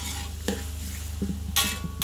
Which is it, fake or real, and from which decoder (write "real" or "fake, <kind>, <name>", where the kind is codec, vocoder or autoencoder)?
real